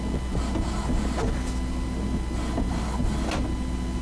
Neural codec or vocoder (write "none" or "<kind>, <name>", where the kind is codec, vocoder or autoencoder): none